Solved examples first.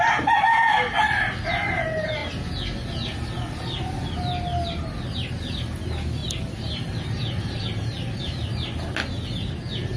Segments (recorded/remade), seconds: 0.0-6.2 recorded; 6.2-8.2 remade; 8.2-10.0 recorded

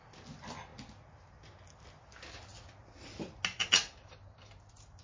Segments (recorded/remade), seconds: 0.0-5.0 recorded

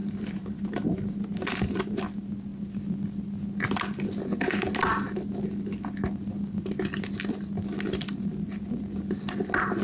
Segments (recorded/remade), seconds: 0.0-2.0 remade; 2.0-9.8 recorded